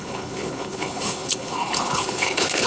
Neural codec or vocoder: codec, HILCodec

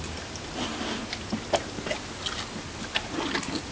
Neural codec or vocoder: none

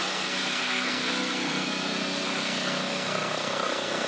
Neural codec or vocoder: codec, SNAC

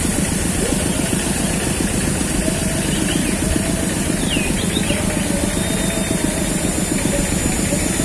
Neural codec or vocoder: none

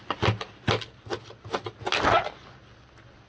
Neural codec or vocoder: none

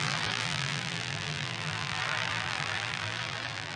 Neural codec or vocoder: vocoder, BigVGAN v2